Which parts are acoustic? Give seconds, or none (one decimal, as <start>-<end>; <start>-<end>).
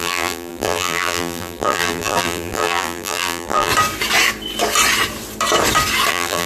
3.7-6.1